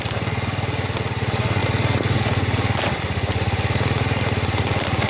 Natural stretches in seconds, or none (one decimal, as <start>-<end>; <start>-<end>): 0.0-5.1